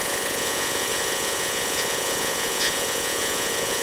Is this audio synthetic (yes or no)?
yes